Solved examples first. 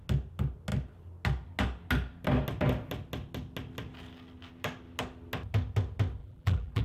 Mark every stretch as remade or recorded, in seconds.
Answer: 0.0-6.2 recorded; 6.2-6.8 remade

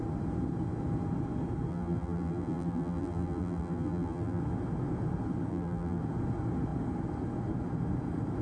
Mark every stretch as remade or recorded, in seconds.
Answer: 0.0-1.7 recorded; 1.7-4.4 remade; 4.4-5.5 recorded; 5.5-6.0 remade; 6.0-8.4 recorded

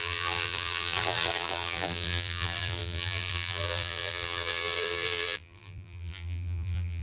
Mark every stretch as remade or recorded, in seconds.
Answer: 0.0-7.0 remade

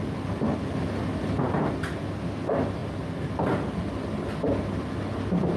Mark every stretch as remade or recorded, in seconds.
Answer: 0.0-5.6 recorded

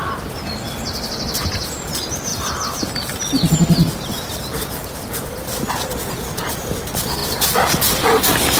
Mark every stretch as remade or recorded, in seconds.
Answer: 0.0-2.3 recorded; 2.3-2.9 remade; 2.9-8.6 recorded

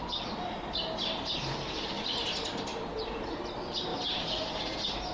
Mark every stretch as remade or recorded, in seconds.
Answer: 0.0-5.1 recorded